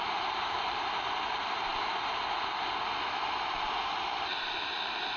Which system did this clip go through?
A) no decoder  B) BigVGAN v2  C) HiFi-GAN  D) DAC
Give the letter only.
A